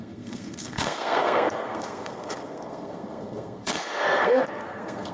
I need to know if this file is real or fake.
fake